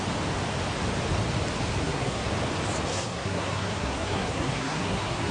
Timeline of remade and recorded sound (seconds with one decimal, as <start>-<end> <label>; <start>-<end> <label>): 0.0-1.8 recorded; 1.8-2.3 remade; 2.3-2.9 recorded; 2.9-5.3 remade